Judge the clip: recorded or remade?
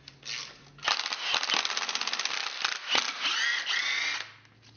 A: recorded